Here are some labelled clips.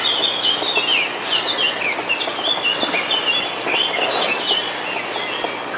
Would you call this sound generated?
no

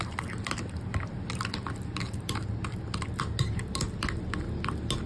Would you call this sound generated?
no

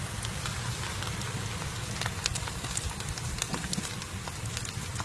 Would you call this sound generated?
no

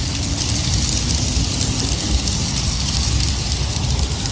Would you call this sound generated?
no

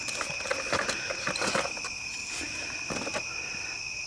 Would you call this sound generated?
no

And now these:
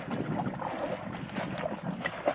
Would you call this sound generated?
no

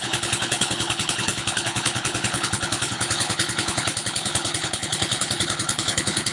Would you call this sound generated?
yes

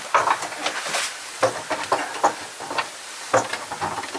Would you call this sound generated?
no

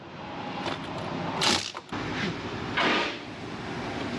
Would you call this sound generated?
no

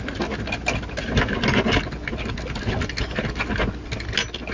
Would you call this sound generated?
no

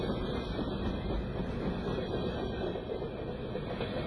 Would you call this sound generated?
no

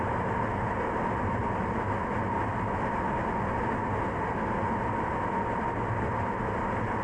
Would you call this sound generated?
no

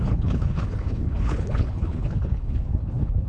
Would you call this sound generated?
yes